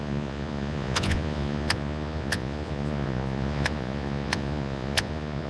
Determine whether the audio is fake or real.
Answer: fake